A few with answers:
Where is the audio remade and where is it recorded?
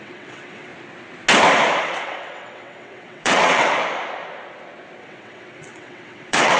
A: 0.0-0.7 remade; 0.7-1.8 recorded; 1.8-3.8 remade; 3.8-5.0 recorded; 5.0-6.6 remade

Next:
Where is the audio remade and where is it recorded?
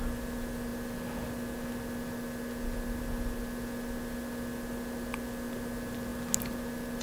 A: 0.0-7.0 recorded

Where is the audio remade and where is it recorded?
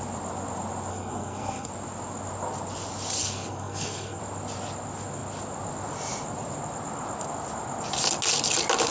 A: 0.0-0.9 recorded; 0.9-1.7 remade; 1.7-3.2 recorded; 3.2-4.2 remade; 4.2-8.9 recorded